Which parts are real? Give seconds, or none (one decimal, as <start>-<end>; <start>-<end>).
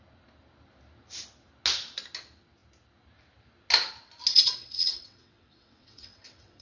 0.0-4.3